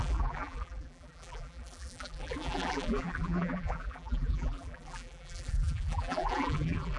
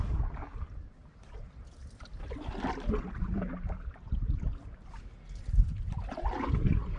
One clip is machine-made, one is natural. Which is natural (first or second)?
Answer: second